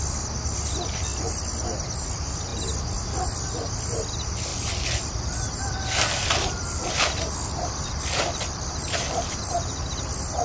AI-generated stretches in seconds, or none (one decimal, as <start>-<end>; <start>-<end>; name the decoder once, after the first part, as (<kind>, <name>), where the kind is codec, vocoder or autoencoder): 4.5-9.4 (vocoder, BigVGAN v2)